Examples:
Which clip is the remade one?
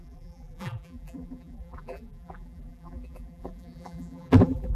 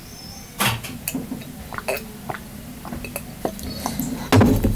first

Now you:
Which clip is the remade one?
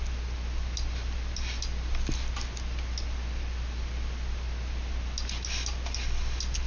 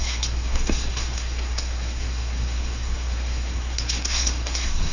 second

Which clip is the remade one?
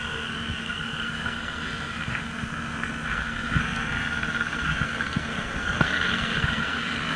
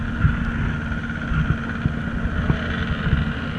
first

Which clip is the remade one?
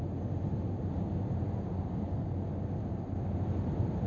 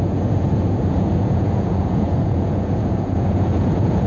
second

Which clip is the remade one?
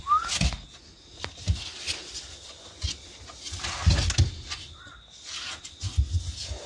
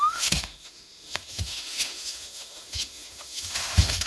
second